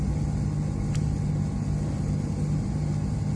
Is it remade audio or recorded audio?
recorded